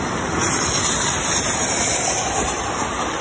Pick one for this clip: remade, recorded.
recorded